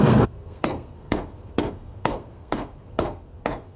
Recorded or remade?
remade